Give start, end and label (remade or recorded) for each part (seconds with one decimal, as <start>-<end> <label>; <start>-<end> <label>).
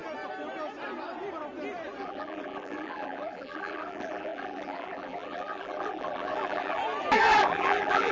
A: 0.0-2.0 recorded; 2.0-6.8 remade; 6.8-7.4 recorded; 7.4-8.1 remade